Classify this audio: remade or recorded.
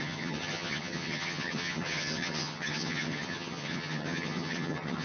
remade